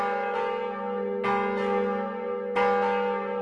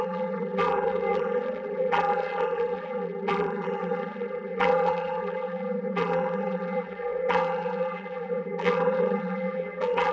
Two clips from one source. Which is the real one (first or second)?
first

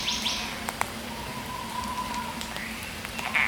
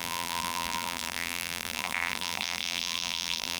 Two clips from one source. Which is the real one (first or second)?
first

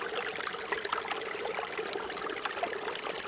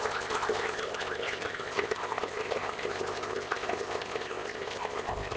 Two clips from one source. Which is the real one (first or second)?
first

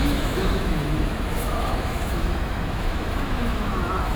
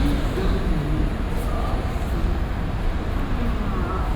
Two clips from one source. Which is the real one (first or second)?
second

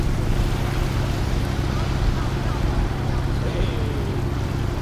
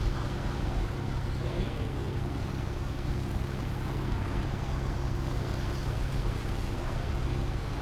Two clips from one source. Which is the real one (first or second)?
first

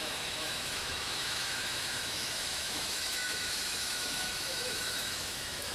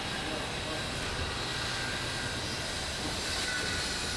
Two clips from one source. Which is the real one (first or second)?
second